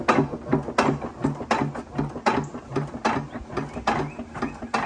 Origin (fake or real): real